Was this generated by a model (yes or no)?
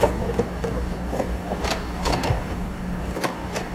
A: yes